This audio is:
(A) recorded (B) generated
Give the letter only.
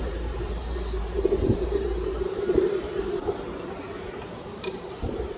B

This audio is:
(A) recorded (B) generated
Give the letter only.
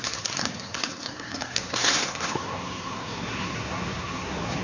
B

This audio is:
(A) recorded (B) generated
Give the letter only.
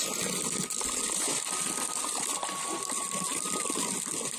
A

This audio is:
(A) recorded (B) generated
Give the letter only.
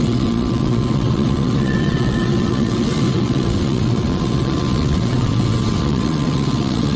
B